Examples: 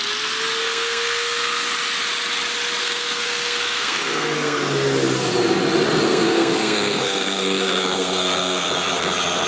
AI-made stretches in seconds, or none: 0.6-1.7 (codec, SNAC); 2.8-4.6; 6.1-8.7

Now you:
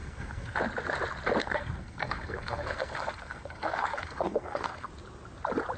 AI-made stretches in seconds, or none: 0.0-0.6 (codec, SNAC); 1.4-4.9

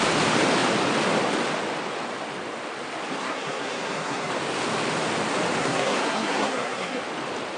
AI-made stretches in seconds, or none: 3.2-4.3 (codec, SNAC); 5.6-7.0

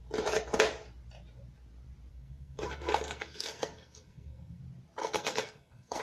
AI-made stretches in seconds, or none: 2.1-4.6 (codec, SNAC); 5.0-6.0

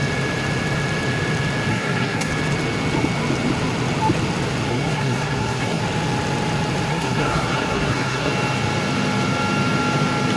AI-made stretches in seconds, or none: 1.7-2.3 (codec, SNAC); 4.7-5.8; 6.9-8.3

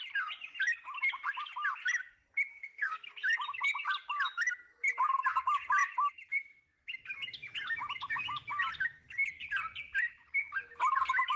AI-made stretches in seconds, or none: 2.5-3.1 (codec, SNAC)

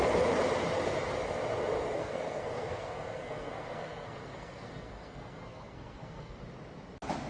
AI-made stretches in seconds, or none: 2.0-6.4 (codec, SNAC)